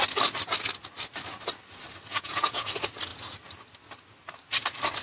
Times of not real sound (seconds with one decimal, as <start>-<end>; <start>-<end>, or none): 2.1-2.7